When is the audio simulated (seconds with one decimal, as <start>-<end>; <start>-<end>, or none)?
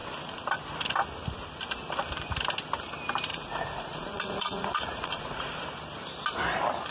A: 3.3-5.6